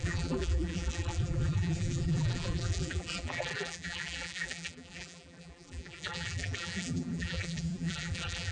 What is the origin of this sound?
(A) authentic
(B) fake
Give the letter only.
B